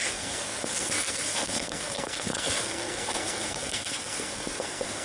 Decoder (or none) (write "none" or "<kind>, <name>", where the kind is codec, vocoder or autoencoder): codec, SNAC